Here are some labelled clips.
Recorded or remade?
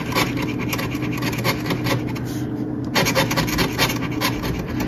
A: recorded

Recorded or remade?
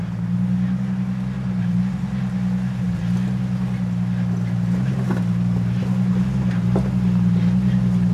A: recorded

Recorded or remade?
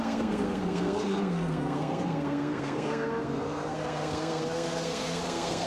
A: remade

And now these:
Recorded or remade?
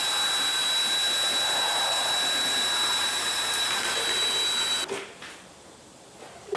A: recorded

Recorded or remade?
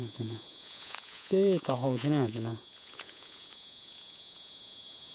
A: remade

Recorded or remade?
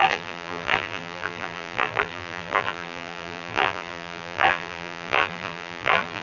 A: remade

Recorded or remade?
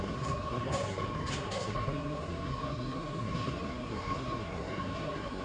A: remade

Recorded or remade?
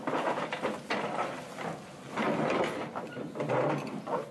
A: recorded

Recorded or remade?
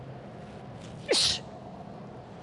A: recorded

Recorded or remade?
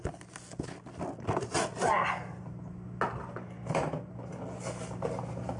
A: recorded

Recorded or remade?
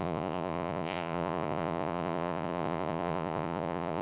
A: remade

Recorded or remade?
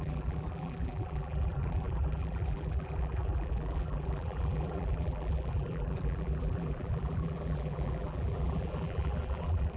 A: remade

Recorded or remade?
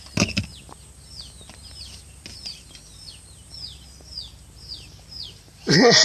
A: recorded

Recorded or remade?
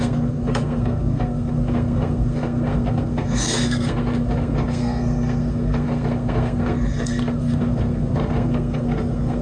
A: remade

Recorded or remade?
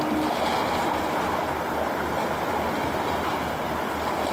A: recorded